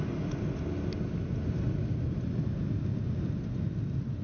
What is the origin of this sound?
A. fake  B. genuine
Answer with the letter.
B